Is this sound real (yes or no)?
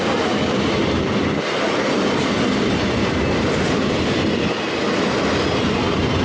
yes